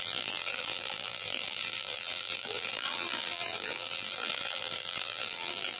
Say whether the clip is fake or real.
fake